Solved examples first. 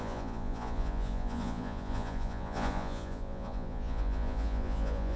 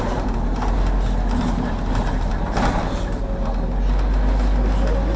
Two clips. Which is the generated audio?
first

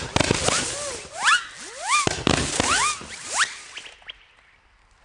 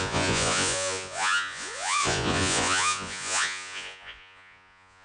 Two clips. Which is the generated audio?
second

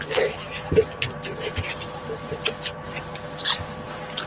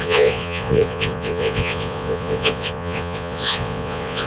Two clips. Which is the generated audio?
second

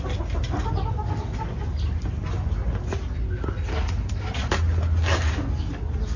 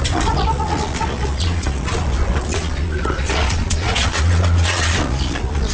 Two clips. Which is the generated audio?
second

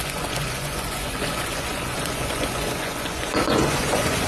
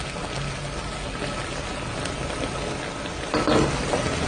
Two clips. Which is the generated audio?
first